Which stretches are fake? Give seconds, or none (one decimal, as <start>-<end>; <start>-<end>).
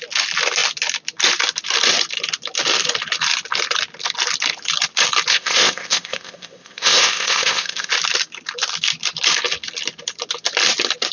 5.3-7.9